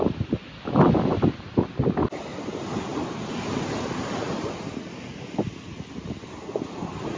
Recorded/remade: recorded